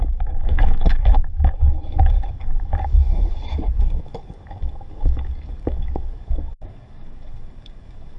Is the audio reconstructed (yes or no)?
yes